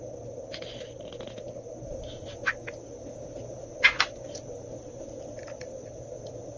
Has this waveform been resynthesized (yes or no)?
no